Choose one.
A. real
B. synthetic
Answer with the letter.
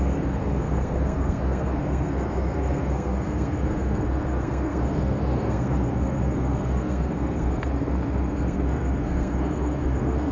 B